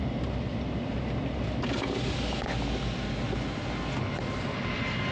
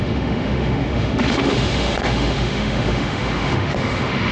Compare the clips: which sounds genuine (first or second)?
first